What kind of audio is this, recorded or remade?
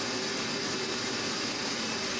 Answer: recorded